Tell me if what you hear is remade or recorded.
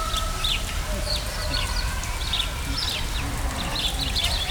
recorded